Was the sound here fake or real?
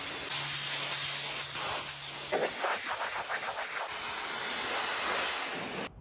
real